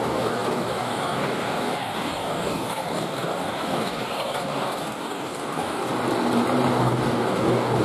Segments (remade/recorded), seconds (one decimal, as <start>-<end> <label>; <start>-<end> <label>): 0.0-5.9 remade; 5.9-6.7 recorded; 6.7-7.8 remade